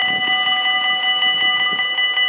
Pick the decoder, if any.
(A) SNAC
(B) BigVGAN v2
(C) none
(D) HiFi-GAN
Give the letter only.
C